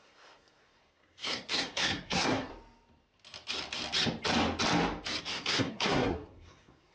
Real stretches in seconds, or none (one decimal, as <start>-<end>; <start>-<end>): 2.5-5.2